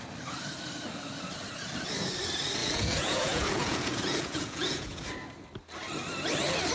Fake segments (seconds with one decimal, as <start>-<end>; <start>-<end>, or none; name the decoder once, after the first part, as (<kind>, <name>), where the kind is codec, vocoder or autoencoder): 2.6-5.1 (vocoder, Vocos)